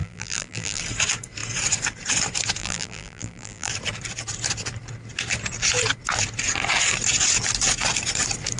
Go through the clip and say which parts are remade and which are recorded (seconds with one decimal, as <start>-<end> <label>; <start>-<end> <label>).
0.0-0.8 remade; 0.8-2.6 recorded; 2.6-3.7 remade; 3.7-8.6 recorded